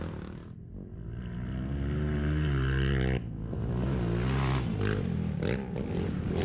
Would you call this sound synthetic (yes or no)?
no